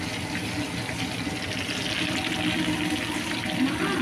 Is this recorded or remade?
recorded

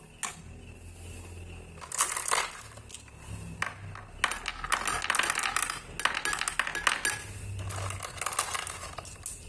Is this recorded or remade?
recorded